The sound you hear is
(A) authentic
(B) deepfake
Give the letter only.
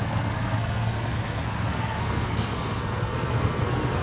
B